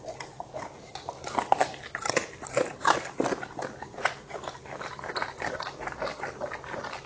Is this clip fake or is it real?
real